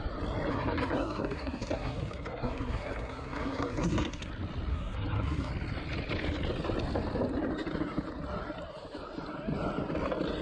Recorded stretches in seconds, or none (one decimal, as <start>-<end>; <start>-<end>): 0.0-0.5; 4.3-4.7; 5.5-10.4